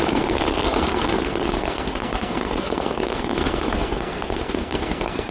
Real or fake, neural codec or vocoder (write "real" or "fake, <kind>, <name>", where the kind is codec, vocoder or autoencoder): fake, codec, SNAC